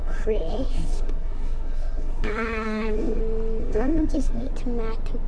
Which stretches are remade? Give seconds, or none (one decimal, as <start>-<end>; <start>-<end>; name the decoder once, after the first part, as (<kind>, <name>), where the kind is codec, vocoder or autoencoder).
0.0-3.2 (codec, SNAC); 3.6-4.5